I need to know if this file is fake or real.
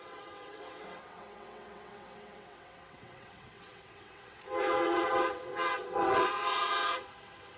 fake